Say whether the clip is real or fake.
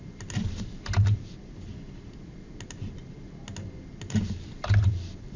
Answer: real